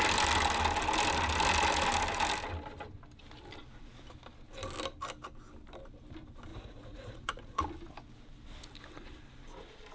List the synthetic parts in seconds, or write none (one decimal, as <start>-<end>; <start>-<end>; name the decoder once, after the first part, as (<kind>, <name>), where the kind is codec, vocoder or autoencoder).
6.5-7.6 (vocoder, Vocos)